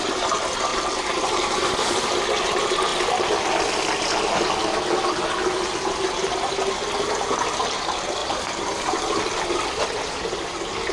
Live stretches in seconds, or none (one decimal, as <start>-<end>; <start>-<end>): 0.0-0.7; 1.3-8.2; 9.5-10.9